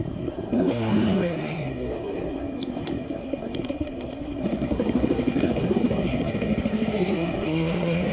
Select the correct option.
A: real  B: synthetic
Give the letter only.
B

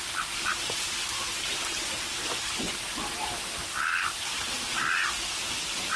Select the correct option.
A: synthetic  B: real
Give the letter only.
B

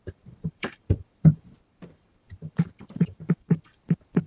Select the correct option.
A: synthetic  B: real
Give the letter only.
A